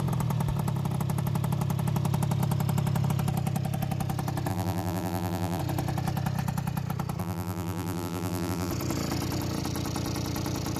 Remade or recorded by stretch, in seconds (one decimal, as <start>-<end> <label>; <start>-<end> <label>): 0.0-4.5 recorded; 4.5-5.6 remade; 5.6-7.2 recorded; 7.2-8.7 remade; 8.7-10.8 recorded